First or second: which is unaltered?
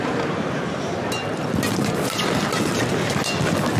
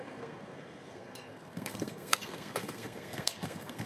first